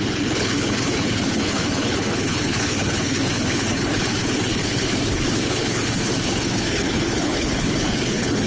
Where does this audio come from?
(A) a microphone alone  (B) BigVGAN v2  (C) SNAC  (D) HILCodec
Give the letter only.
D